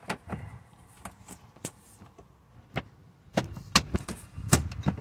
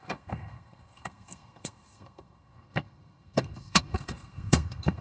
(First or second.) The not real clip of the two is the second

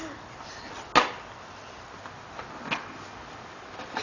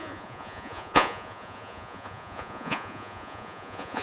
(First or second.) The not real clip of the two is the second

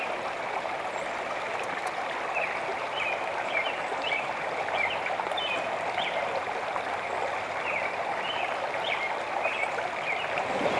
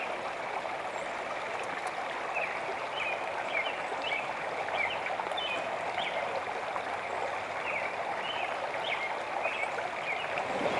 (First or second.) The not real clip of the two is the first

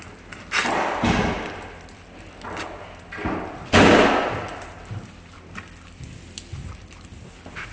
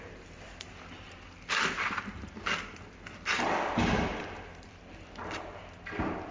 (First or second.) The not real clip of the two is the second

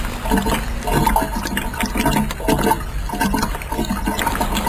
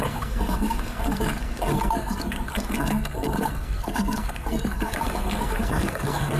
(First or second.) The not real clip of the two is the second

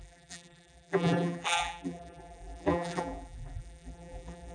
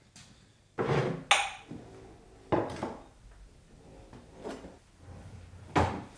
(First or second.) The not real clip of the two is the first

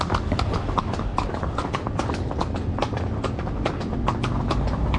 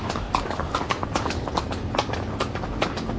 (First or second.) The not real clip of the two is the first